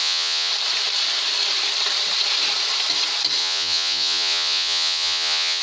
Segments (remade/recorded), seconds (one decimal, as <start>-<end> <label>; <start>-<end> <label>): 0.0-0.5 remade; 0.5-3.4 recorded; 3.4-5.6 remade